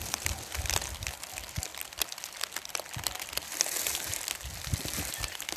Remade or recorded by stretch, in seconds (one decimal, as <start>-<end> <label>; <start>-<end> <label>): 0.0-5.6 recorded